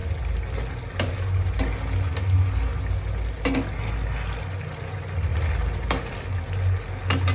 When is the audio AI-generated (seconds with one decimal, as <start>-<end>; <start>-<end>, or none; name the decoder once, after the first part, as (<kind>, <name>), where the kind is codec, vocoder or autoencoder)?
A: none